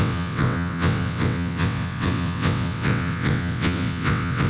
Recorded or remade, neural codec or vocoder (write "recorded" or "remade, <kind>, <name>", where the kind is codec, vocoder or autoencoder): remade, vocoder, WaveNeXt